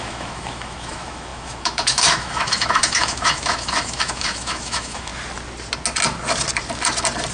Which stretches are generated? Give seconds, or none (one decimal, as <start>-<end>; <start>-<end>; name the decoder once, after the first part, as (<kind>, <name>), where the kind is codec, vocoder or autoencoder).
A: 0.0-5.1 (autoencoder, DAC-VAE)